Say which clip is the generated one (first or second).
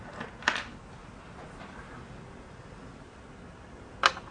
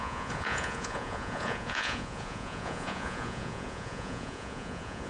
second